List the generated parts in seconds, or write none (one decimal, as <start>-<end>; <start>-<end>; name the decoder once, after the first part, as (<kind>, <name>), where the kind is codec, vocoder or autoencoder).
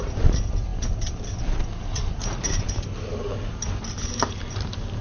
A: 0.7-2.1 (vocoder, BigVGAN v2)